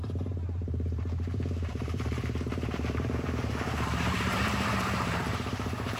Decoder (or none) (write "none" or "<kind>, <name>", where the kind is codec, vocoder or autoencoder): vocoder, BigVGAN v2